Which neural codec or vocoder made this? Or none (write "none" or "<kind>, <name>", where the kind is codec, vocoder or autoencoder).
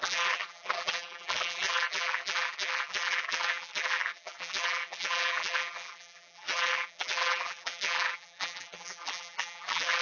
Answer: vocoder, BigVGAN v2